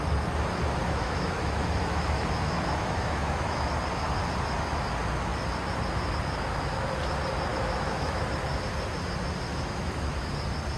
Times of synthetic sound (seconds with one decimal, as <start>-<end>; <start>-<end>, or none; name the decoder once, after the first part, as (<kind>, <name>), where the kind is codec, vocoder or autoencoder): 0.8-3.7 (autoencoder, DAC-VAE); 7.5-8.2; 9.5-10.3